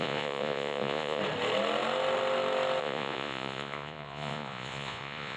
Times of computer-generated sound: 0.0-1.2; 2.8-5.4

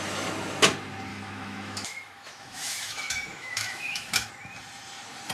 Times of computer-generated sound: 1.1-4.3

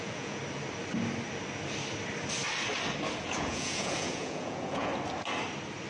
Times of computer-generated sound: 0.0-0.4; 3.2-4.9